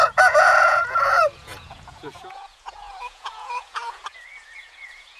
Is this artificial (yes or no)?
yes